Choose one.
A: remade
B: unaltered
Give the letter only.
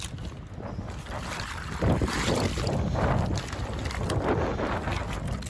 B